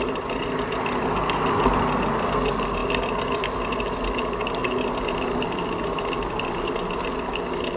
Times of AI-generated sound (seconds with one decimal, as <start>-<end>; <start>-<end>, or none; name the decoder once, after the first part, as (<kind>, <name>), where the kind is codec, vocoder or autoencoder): none